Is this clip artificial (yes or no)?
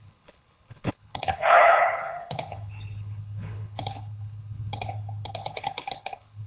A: yes